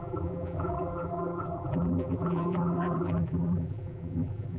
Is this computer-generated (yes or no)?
yes